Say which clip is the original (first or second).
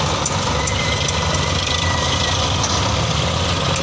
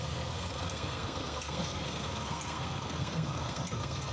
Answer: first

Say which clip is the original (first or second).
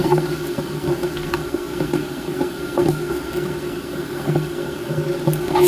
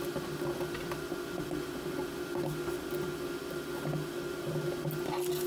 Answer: second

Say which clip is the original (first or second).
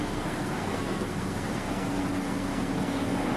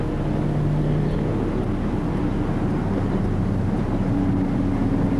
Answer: second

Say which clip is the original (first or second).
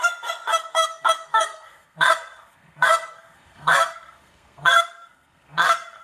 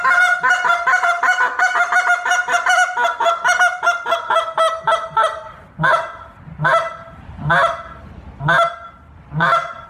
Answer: second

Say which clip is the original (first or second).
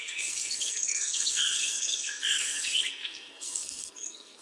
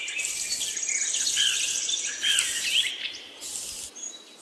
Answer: second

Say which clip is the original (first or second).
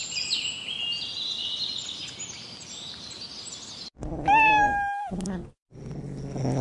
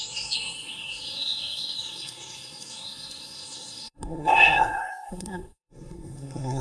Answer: first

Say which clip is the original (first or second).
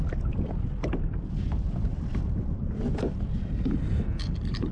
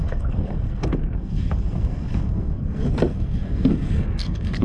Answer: first